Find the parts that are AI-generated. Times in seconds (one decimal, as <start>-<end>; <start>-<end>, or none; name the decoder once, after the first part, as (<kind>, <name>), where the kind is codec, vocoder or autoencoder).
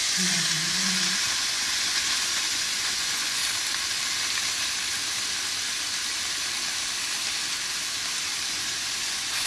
0.0-3.4 (vocoder, Vocos); 8.5-9.5